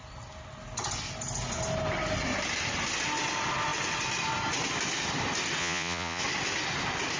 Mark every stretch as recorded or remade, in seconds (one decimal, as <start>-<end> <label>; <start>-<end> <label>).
0.0-5.6 recorded; 5.6-6.2 remade; 6.2-7.2 recorded